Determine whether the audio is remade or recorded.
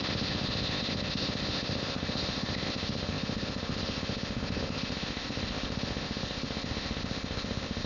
remade